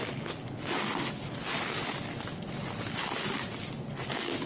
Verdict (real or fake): real